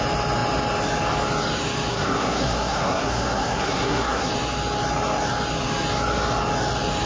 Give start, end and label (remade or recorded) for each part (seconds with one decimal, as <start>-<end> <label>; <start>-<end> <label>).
0.0-1.9 recorded; 1.9-4.3 remade; 4.3-7.1 recorded